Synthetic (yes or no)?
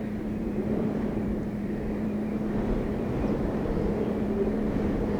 yes